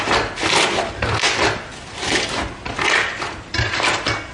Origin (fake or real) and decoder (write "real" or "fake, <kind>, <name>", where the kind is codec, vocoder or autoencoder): real